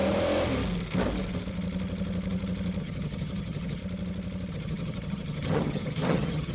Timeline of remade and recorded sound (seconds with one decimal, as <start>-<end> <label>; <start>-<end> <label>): 0.0-2.8 recorded; 2.8-3.8 remade; 3.8-4.5 recorded; 4.5-6.5 remade